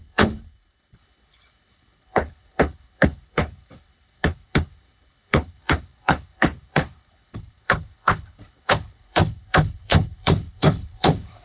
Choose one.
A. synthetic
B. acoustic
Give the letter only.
A